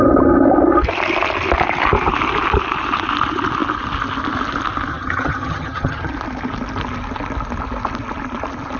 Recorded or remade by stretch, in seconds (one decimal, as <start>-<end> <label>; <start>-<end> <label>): 0.0-4.9 recorded; 4.9-6.1 remade; 6.1-8.8 recorded